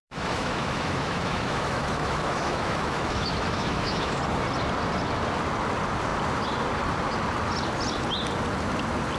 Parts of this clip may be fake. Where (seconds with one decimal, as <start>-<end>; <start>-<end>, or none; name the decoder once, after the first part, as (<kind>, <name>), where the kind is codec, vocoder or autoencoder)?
0.0-4.2 (autoencoder, DAC-VAE)